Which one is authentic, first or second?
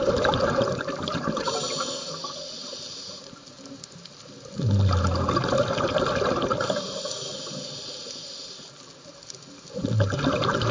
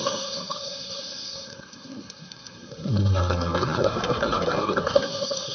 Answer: first